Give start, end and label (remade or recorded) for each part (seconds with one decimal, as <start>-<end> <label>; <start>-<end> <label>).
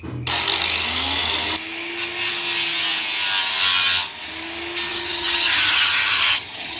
0.0-4.9 recorded; 4.9-6.8 remade